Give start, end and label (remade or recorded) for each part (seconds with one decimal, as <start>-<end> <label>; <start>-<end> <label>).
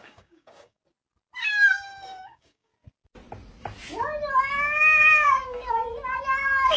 0.0-0.8 remade; 0.8-1.5 recorded; 1.5-2.7 remade; 2.7-4.4 recorded; 4.4-5.8 remade; 5.8-6.8 recorded